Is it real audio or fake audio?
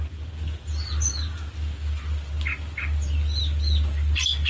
real